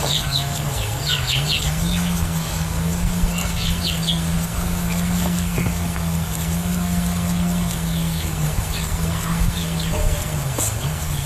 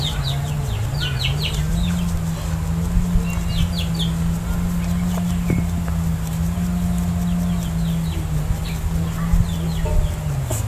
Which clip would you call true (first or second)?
second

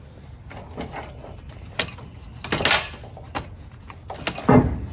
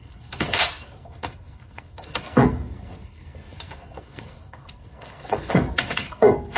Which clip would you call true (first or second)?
first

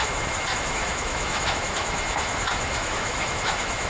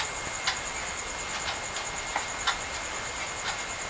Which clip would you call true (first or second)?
second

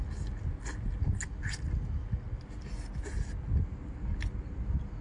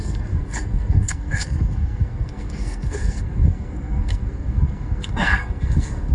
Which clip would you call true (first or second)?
first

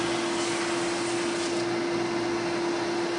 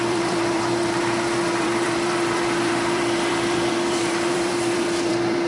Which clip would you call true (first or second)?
first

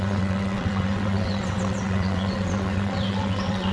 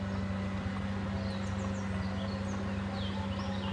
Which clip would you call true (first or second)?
second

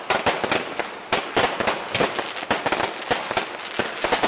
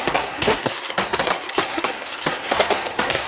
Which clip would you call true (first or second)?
first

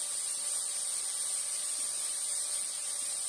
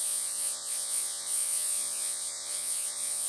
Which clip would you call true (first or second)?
first